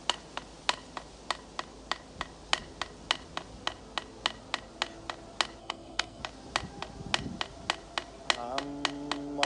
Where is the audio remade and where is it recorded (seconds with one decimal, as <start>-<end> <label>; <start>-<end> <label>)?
0.0-5.6 recorded; 5.6-6.2 remade; 6.2-9.4 recorded